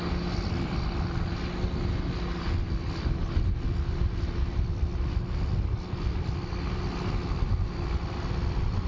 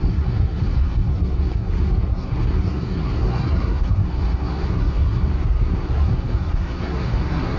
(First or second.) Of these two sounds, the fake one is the second